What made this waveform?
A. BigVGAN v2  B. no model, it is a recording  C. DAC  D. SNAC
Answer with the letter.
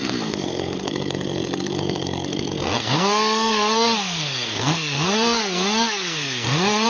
D